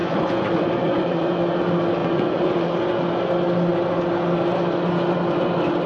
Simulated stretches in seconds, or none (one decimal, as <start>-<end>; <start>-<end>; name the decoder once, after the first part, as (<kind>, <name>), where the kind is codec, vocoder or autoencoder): 0.0-1.3 (vocoder, Vocos); 2.0-3.0